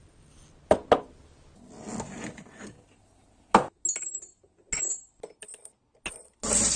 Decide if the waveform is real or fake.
real